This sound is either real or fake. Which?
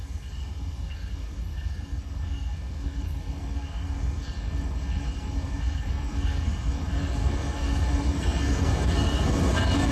fake